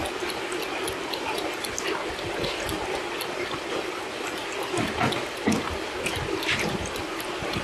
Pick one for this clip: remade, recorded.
recorded